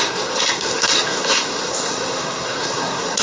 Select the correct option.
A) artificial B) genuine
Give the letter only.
A